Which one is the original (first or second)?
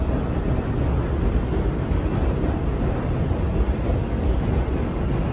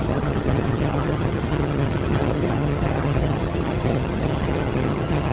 first